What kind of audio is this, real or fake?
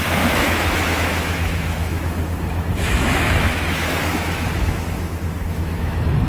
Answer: fake